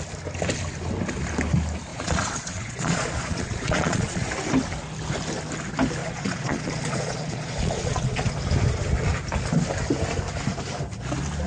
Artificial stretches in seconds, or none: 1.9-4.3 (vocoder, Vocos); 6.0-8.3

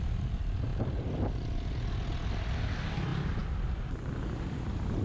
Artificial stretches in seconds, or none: none

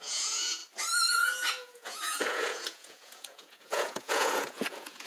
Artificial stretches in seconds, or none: 0.0-0.6 (vocoder, Vocos); 1.1-5.1

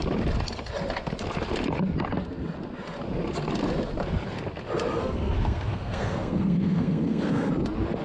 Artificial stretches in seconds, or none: 4.9-7.5 (codec, SNAC)